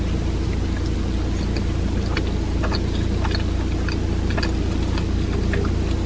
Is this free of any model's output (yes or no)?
yes